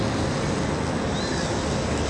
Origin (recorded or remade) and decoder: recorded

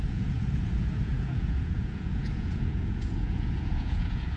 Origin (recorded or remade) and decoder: remade, vocoder, Vocos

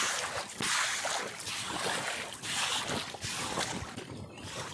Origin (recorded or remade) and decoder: recorded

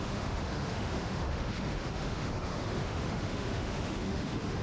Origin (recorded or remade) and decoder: remade, autoencoder, DAC-VAE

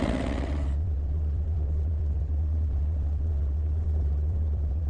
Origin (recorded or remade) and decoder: remade, vocoder, WaveNeXt